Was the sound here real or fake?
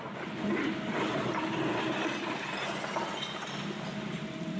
real